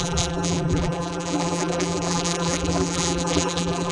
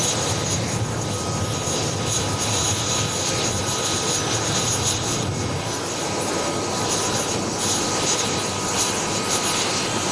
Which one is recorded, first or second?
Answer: second